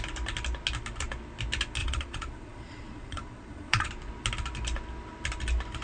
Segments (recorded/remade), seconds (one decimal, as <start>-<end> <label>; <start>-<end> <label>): 0.0-1.8 recorded; 1.8-3.9 remade; 3.9-5.8 recorded